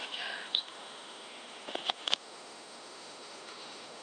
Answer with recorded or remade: remade